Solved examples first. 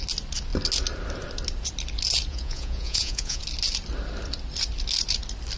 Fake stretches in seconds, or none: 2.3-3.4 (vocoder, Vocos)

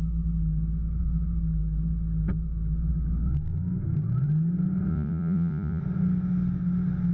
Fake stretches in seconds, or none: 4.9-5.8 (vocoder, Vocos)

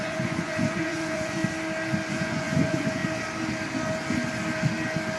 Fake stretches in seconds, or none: 0.0-1.4 (vocoder, Vocos); 2.1-3.0

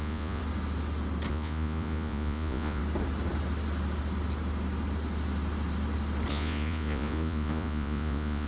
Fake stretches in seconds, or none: 0.0-0.4 (vocoder, Vocos); 1.3-2.8; 6.3-8.5